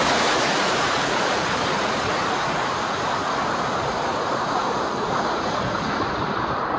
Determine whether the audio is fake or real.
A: fake